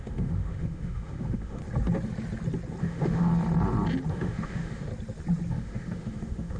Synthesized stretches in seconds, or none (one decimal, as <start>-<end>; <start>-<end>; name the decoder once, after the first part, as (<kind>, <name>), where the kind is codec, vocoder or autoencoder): 0.0-1.6 (autoencoder, DAC-VAE); 2.8-3.3; 4.1-4.9; 5.5-6.6

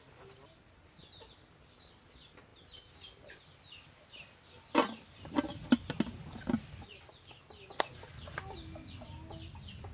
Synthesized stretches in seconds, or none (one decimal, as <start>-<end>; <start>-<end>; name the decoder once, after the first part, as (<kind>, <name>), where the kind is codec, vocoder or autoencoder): none